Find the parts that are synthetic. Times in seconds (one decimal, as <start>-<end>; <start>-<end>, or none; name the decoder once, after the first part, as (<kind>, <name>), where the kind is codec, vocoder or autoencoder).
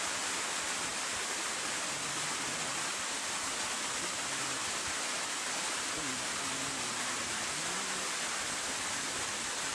0.0-9.7 (vocoder, BigVGAN v2)